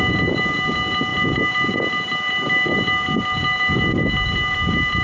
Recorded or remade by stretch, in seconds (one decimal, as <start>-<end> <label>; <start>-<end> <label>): 0.0-5.0 recorded